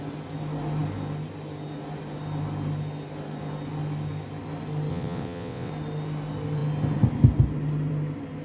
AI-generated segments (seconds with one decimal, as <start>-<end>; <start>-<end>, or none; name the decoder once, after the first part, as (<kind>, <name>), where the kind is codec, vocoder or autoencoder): 4.9-5.7 (vocoder, WaveNeXt)